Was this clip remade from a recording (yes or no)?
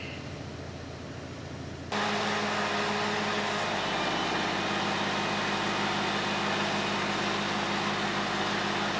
no